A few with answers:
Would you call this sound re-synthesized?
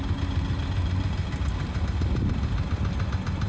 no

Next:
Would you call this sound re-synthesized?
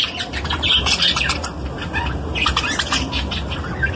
no